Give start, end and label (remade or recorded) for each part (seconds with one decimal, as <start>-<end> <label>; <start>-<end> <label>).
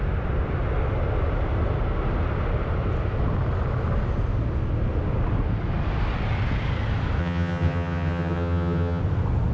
0.0-7.2 recorded; 7.2-9.0 remade; 9.0-9.5 recorded